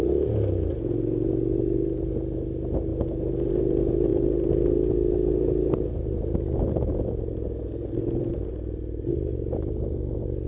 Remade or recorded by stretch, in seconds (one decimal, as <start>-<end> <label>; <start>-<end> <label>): 0.0-10.5 recorded